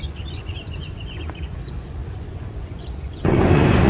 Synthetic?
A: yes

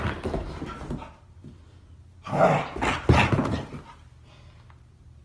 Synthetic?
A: no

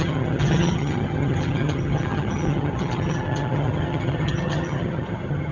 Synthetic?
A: yes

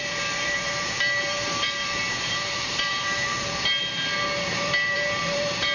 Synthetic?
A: yes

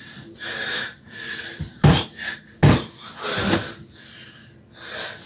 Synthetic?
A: no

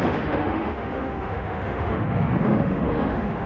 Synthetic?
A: yes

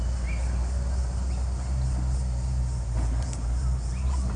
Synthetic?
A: no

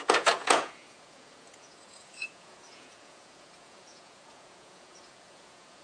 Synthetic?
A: yes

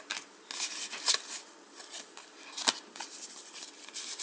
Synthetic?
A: no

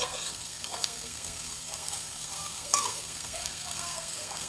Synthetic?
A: yes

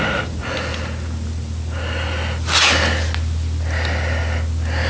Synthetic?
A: no